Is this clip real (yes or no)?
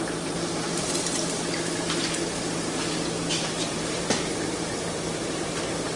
no